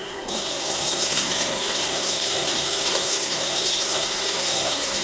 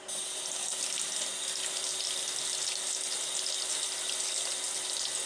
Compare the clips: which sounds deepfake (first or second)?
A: first